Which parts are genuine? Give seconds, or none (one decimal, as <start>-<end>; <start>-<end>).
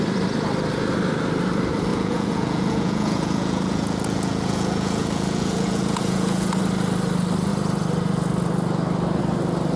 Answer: 0.0-1.9; 6.6-9.8